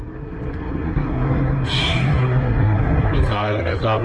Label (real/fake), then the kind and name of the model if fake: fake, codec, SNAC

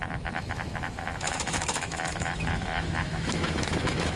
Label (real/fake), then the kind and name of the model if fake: fake, autoencoder, DAC-VAE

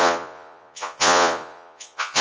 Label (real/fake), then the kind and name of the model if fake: fake, vocoder, Vocos